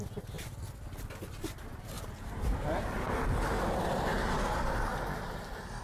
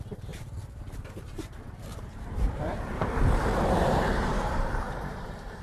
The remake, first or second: second